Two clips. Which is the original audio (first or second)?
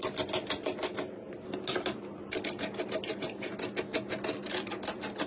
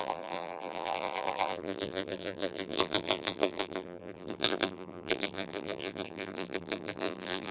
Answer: first